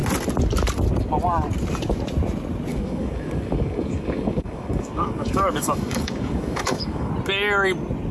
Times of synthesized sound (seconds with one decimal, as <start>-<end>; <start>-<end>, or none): 2.7-7.1